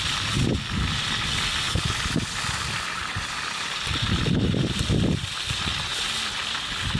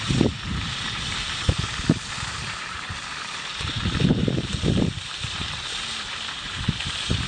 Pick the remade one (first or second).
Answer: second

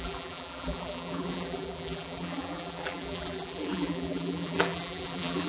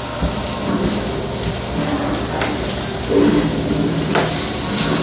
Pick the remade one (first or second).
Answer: first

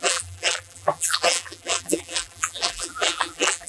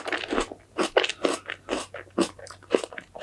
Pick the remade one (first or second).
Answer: first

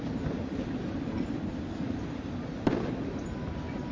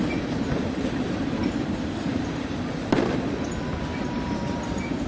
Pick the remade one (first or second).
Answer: second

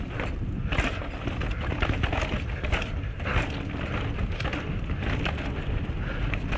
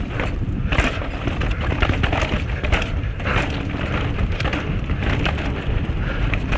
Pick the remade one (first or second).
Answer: second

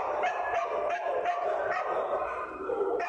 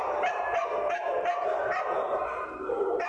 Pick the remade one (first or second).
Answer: first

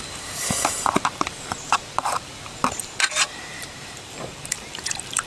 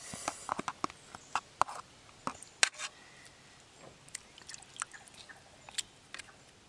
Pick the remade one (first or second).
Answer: first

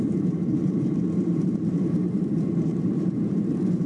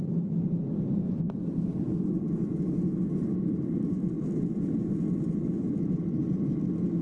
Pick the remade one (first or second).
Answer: first